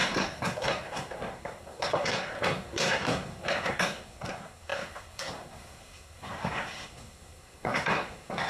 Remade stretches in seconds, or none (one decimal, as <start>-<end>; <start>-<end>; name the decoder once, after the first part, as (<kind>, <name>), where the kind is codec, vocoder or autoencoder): 0.0-8.5 (codec, SNAC)